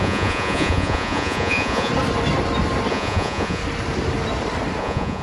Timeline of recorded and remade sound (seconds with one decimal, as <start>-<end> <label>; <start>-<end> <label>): 0.0-1.9 remade; 1.9-2.9 recorded; 2.9-3.6 remade; 3.6-4.8 recorded; 4.8-5.2 remade